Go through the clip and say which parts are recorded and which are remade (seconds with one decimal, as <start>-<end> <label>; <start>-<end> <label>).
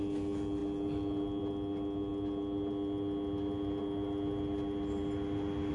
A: 0.0-5.7 recorded